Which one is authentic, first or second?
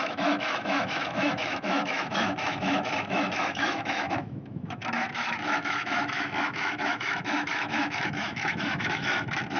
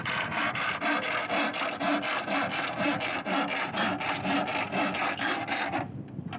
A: second